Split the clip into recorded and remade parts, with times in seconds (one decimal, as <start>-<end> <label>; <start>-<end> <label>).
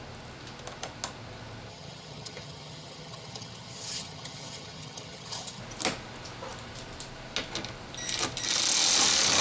0.0-1.7 recorded; 1.7-5.6 remade; 5.6-9.4 recorded